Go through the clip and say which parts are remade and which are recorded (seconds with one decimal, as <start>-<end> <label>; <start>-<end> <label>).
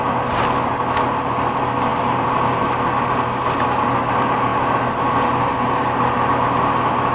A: 0.0-7.1 recorded